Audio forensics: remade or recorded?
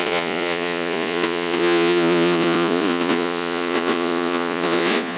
remade